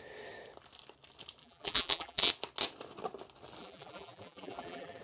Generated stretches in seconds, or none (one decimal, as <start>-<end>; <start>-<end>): 1.4-2.3; 3.6-5.0